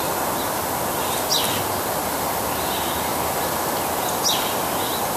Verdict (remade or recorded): recorded